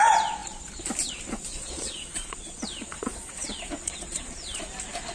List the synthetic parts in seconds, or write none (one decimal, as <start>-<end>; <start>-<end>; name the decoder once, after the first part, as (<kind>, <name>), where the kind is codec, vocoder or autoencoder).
1.5-4.6 (vocoder, Vocos)